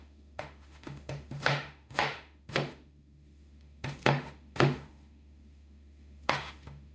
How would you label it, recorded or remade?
remade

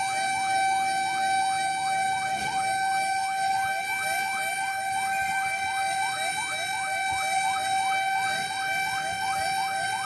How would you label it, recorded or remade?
recorded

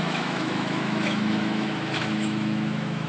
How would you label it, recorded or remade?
remade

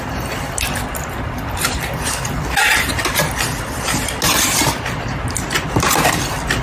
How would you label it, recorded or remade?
recorded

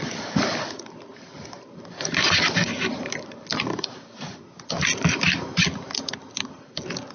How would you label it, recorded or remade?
recorded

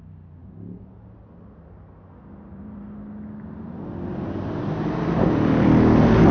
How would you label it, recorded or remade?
recorded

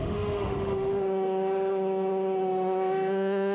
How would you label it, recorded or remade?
remade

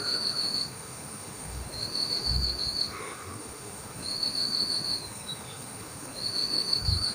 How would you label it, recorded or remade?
remade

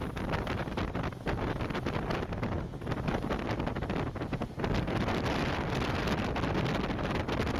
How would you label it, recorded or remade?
recorded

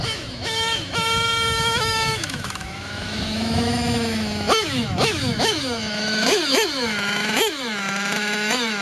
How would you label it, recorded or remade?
remade